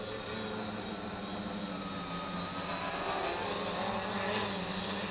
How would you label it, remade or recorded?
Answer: recorded